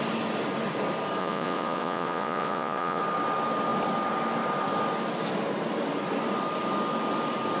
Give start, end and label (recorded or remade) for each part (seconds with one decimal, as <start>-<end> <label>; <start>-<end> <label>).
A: 0.0-1.2 recorded; 1.2-3.0 remade; 3.0-7.6 recorded